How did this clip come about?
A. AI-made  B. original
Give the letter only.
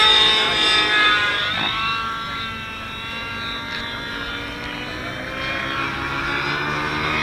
B